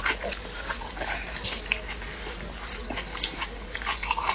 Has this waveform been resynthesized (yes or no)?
no